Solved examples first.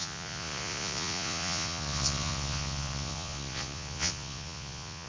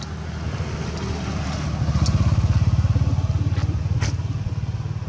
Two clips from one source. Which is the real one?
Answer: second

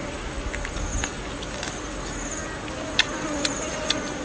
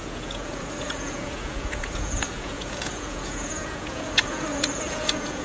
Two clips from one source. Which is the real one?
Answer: first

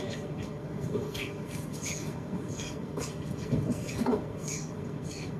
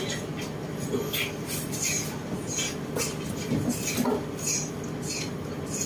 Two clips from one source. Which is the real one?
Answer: second